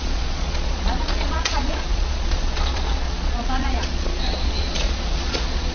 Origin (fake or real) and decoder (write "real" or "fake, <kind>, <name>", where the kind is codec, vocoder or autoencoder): fake, vocoder, Vocos